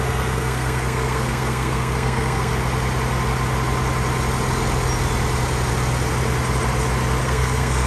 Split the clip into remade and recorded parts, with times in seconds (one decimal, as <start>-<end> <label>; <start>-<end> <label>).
0.0-2.5 remade; 2.5-7.2 recorded; 7.2-7.9 remade